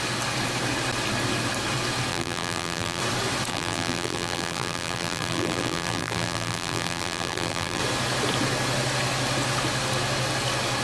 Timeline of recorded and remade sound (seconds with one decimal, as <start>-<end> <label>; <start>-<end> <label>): 0.0-2.1 recorded; 2.1-3.0 remade; 3.0-3.5 recorded; 3.5-7.8 remade; 7.8-10.8 recorded